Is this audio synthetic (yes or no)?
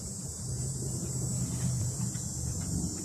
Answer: no